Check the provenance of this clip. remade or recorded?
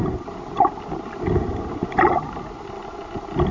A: recorded